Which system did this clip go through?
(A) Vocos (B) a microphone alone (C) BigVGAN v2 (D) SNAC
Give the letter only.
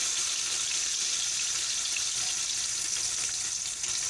B